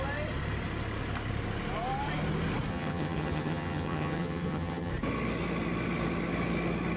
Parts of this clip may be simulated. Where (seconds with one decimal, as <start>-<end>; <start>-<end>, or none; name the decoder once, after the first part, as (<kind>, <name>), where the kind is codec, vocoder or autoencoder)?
2.7-4.9 (vocoder, HiFi-GAN)